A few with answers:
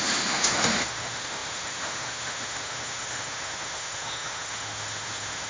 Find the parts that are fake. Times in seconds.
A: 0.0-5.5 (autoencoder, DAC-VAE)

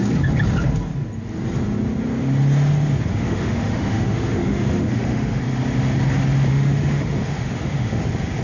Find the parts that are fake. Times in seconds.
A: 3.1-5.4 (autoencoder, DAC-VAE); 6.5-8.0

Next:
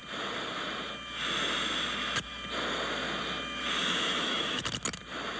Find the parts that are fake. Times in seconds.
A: 3.8-4.6 (autoencoder, DAC-VAE)

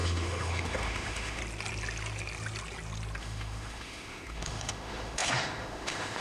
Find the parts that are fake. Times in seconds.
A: 0.0-1.4 (autoencoder, DAC-VAE); 3.2-6.2

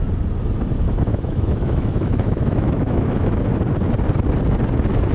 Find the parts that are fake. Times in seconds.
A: 1.1-3.4 (autoencoder, DAC-VAE)

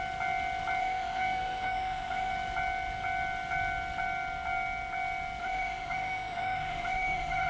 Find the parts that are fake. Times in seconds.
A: 0.8-2.3 (autoencoder, DAC-VAE); 5.4-7.5

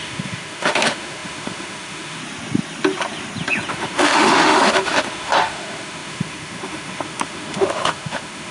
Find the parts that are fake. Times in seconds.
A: 0.0-2.2 (autoencoder, DAC-VAE); 3.7-8.5

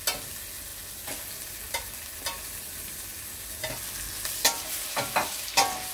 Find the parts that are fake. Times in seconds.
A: none